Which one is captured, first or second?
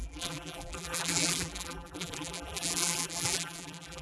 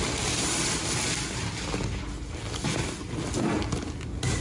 second